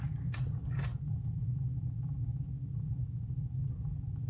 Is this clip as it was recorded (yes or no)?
yes